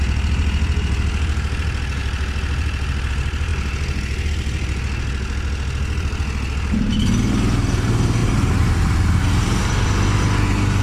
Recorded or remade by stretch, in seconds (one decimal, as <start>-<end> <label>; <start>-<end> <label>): 0.0-8.2 recorded; 8.2-9.6 remade; 9.6-10.8 recorded